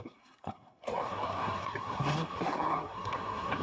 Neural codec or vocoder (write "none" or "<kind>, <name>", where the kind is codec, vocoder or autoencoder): codec, SNAC